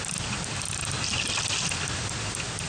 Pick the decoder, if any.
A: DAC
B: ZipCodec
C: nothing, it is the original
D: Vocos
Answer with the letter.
C